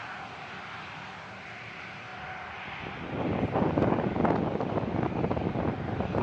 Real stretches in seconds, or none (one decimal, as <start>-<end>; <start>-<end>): 0.0-6.2